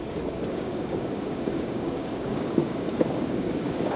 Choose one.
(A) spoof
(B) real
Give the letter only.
A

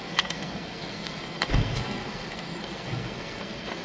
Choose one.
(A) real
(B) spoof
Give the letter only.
B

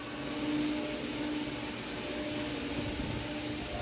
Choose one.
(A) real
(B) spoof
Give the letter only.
A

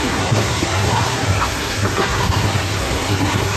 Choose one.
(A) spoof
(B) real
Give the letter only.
A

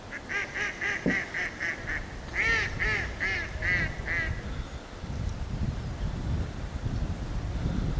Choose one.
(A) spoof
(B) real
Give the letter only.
B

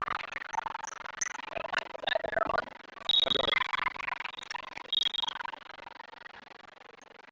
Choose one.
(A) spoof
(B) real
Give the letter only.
B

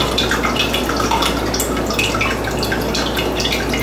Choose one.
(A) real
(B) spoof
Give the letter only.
A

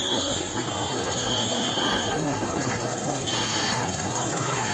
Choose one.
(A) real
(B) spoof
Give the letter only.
B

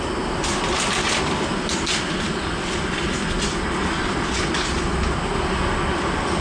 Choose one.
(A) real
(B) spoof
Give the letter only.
A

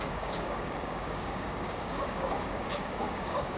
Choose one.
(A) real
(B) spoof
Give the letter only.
B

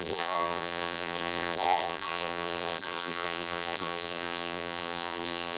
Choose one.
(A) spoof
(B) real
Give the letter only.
A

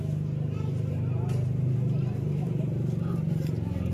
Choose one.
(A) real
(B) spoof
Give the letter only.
B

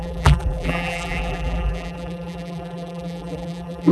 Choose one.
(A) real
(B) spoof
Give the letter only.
B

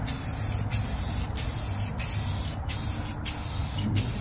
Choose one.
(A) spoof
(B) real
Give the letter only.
B